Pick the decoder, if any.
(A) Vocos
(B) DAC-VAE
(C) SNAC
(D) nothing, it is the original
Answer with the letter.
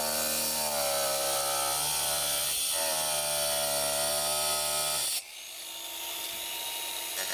D